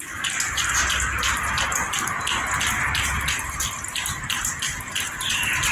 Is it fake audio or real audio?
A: real